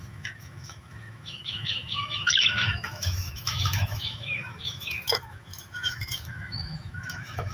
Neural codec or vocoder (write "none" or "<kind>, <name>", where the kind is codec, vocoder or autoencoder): autoencoder, DAC-VAE